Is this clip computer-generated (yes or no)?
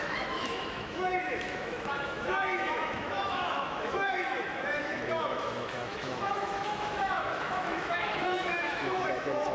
yes